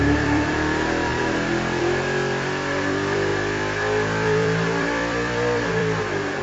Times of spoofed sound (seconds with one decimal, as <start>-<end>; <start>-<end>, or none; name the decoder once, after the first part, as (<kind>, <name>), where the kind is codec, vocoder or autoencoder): 0.0-6.4 (vocoder, BigVGAN v2)